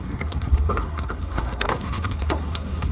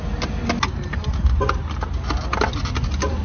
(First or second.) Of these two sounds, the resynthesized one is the first